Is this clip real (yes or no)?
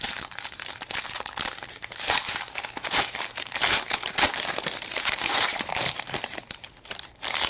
no